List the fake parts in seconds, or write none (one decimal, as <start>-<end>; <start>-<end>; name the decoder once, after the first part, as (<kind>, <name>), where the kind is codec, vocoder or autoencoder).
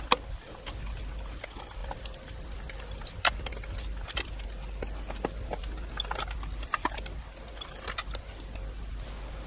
1.8-3.5 (vocoder, BigVGAN v2)